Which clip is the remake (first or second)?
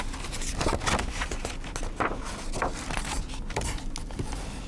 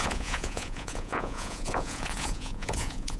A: second